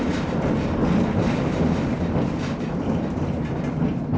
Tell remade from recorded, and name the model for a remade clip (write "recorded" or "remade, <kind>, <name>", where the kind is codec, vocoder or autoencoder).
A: recorded